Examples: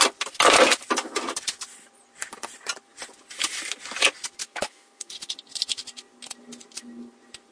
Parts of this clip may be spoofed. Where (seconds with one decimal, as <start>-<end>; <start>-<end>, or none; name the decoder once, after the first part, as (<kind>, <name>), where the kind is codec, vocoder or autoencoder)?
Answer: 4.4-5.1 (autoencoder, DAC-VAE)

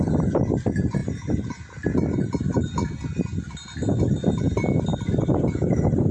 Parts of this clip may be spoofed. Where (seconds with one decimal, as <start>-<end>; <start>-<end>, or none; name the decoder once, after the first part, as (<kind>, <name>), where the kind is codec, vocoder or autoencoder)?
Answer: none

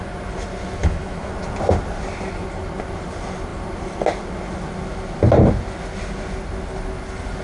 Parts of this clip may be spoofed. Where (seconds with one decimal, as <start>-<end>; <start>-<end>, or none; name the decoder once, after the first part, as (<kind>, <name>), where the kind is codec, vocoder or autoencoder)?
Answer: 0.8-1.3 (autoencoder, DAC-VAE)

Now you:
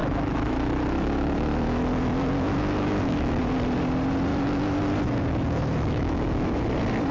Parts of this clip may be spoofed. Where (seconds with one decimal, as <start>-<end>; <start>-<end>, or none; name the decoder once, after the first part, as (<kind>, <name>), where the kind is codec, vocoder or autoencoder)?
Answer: 0.0-3.4 (autoencoder, DAC-VAE); 4.3-6.6

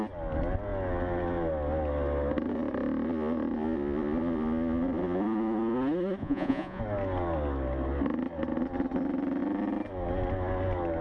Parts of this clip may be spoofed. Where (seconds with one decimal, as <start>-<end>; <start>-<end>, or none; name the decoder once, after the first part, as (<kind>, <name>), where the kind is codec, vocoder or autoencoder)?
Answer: 6.2-6.8 (vocoder, Vocos)